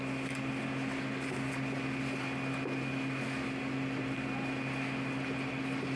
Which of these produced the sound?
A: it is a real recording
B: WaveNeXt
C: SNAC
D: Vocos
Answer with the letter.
A